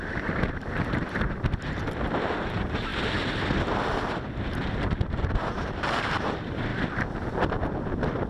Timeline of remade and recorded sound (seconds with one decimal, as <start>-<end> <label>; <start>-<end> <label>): 0.0-2.9 remade; 2.9-4.1 recorded; 4.1-6.7 remade; 6.7-7.8 recorded; 7.8-8.3 remade